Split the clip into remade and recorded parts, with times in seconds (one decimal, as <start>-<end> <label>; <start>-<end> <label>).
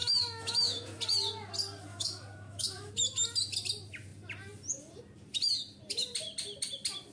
0.0-1.0 remade; 1.0-1.9 recorded; 1.9-2.9 remade; 2.9-7.1 recorded